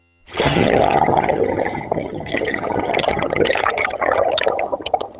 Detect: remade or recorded remade